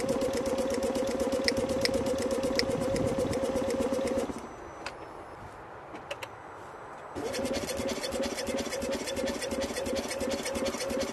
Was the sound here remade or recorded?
recorded